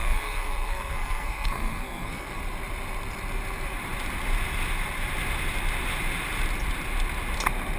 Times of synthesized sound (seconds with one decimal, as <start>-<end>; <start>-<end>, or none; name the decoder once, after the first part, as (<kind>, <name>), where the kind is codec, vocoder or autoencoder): 0.0-2.4 (codec, SNAC)